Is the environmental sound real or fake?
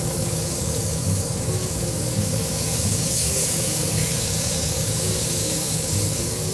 fake